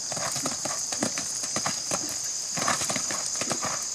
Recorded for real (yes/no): no